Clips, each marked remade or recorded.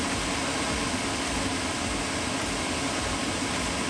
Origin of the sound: recorded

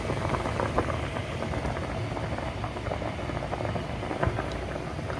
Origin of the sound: recorded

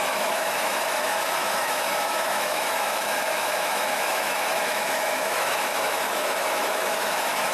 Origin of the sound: remade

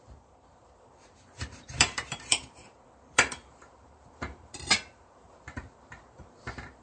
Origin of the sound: remade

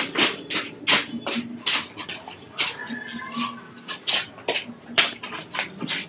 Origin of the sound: recorded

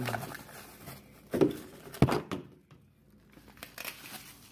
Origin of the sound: recorded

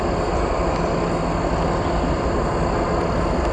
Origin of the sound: recorded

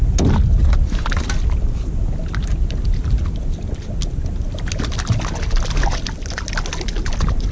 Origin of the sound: recorded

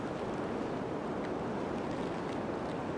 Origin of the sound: recorded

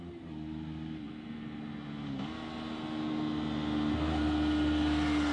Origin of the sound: recorded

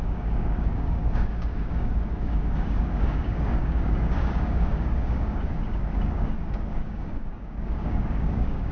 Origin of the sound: remade